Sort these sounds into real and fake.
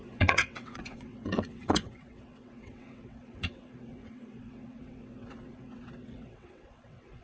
fake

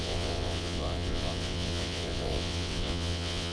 fake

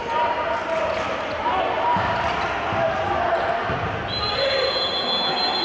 real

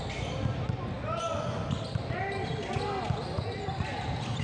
real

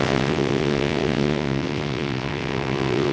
fake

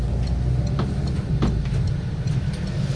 real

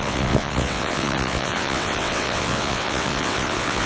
fake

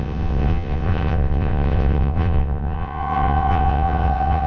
fake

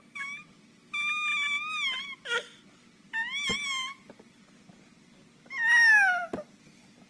real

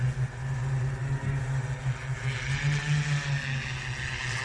real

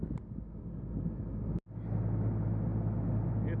real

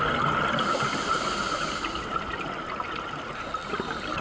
real